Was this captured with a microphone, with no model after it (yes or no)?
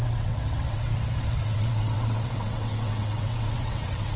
no